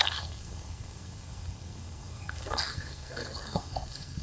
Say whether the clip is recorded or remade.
remade